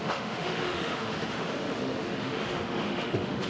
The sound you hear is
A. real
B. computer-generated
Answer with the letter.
B